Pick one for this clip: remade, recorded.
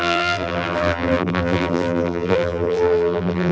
remade